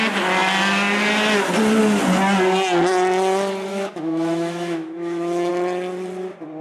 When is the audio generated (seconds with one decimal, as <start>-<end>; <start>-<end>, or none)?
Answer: 3.7-5.5